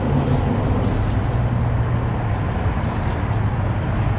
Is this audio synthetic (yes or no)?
no